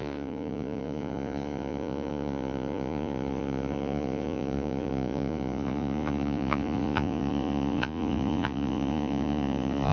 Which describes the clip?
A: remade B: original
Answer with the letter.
A